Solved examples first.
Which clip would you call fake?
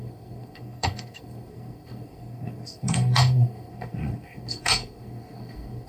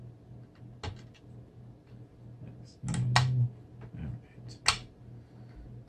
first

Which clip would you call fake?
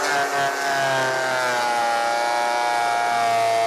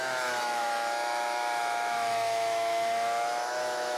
second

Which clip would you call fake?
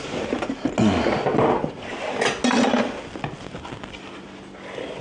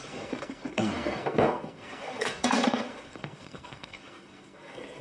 second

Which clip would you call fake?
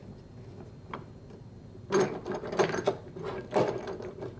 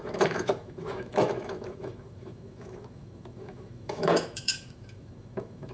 second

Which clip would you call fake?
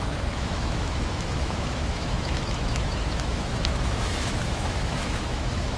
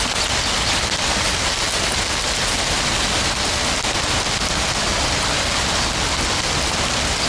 first